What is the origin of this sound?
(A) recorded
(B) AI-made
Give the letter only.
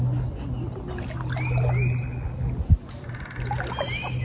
A